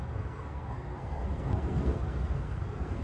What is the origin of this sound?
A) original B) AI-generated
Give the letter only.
B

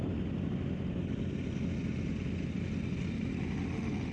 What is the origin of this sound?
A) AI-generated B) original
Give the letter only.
B